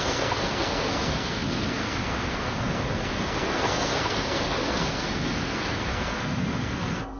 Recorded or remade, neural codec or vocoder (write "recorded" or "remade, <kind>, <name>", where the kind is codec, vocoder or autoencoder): remade, codec, SNAC